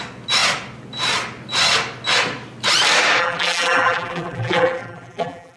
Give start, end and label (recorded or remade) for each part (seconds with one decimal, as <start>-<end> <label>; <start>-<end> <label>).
0.0-3.2 recorded; 3.2-5.6 remade